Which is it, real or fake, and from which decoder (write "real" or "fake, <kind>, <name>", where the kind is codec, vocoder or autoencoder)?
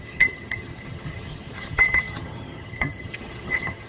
fake, vocoder, HiFi-GAN